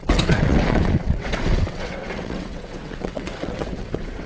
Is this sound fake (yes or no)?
yes